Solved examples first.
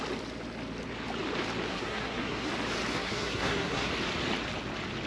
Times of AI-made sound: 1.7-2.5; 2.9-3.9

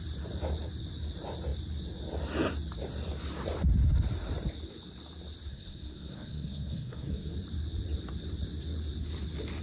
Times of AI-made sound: 5.5-7.3

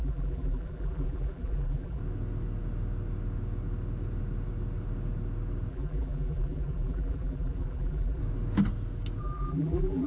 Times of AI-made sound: 0.0-2.0; 5.7-8.2; 9.2-10.1

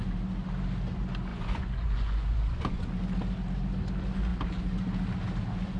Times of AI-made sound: 1.3-2.9

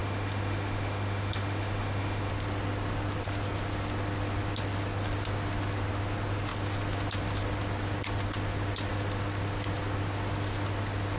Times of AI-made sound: 0.0-2.3